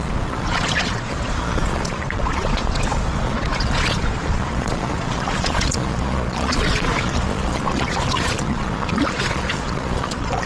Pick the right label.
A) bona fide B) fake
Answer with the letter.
B